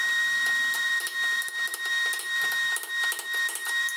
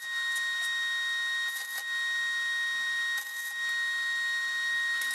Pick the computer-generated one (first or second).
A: first